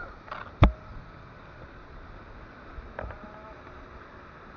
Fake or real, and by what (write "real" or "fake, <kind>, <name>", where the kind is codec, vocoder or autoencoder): real